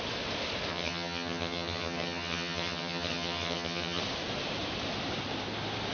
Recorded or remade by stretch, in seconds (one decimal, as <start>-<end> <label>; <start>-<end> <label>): 0.0-0.7 recorded; 0.7-4.0 remade; 4.0-5.9 recorded